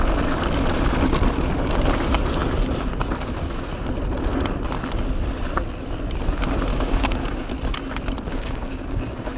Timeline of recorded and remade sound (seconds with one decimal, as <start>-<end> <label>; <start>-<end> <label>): 0.0-6.7 recorded; 6.7-7.5 remade; 7.5-8.3 recorded; 8.3-9.4 remade